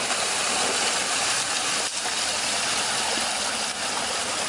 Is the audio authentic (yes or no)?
yes